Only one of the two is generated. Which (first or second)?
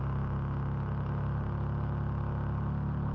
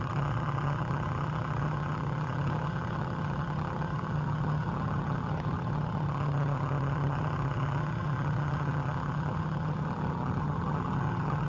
second